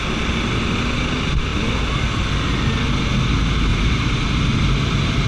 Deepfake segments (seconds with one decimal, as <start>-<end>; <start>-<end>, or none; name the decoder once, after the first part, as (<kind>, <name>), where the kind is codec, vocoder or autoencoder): 3.7-4.3 (vocoder, BigVGAN v2)

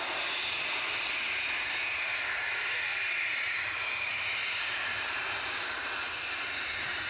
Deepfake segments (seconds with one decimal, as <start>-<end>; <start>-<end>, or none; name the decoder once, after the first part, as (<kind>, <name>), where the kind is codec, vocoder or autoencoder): none

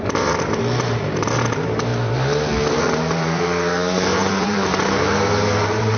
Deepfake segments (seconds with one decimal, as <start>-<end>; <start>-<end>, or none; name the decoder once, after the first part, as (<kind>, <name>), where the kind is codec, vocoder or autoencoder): 0.0-1.9 (vocoder, BigVGAN v2); 2.7-6.0

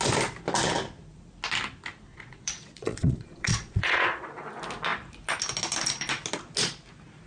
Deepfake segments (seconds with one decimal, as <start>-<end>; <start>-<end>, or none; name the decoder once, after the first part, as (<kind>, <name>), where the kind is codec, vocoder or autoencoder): 2.1-4.5 (vocoder, Vocos)